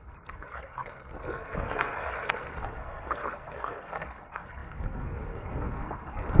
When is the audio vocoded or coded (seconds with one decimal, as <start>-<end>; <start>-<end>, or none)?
0.0-6.4